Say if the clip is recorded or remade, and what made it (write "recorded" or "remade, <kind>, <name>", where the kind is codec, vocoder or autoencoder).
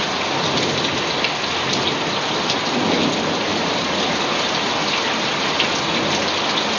recorded